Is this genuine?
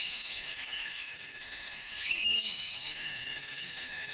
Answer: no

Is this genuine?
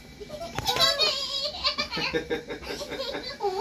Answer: yes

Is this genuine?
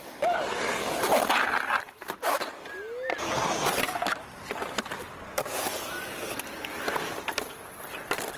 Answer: yes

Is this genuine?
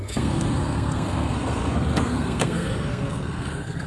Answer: no